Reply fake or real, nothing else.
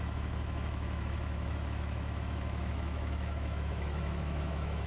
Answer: fake